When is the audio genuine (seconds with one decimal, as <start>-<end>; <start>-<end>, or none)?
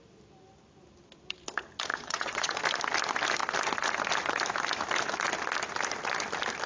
0.0-1.9; 2.6-6.7